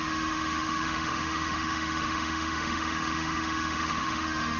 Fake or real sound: fake